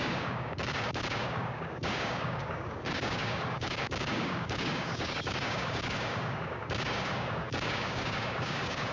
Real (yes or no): no